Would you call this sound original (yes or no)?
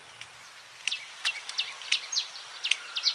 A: yes